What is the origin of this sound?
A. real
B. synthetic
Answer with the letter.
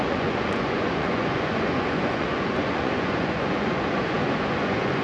B